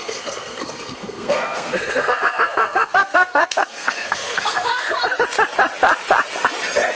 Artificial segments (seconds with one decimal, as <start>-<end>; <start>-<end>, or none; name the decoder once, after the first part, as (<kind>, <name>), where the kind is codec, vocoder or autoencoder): 0.0-5.0 (codec, SNAC)